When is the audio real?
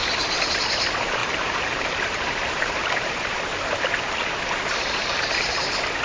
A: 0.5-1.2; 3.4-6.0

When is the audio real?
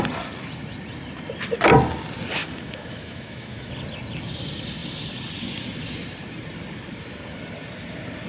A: 0.0-2.4; 3.7-8.3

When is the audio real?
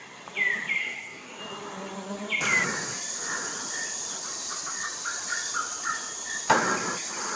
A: 0.0-0.8; 1.4-7.4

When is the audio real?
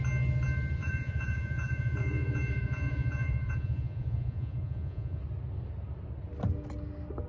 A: 0.0-0.8; 5.2-7.3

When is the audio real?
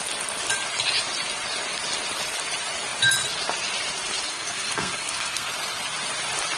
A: 0.0-4.3; 5.5-6.6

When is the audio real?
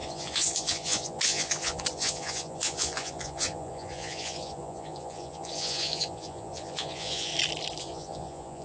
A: 7.3-7.8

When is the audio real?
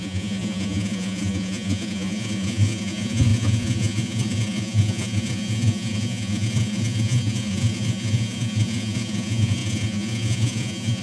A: none